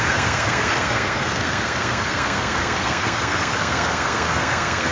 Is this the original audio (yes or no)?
no